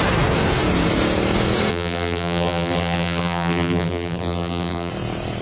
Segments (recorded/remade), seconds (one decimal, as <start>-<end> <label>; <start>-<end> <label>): 0.0-1.7 recorded; 1.7-4.9 remade; 4.9-5.4 recorded